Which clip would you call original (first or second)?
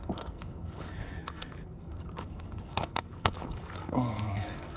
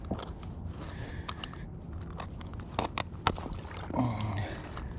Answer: second